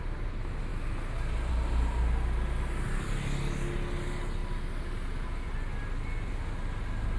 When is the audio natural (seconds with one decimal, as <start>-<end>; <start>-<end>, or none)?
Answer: 0.0-7.2